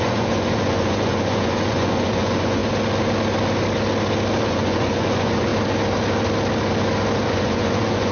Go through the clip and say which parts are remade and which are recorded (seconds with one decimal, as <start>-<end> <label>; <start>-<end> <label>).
0.0-2.6 remade; 2.6-4.4 recorded; 4.4-5.5 remade; 5.5-7.3 recorded; 7.3-8.1 remade